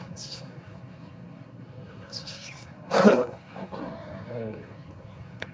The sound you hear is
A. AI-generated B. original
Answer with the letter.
A